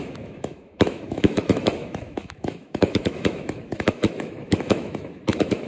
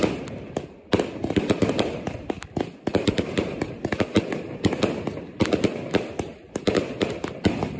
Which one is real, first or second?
second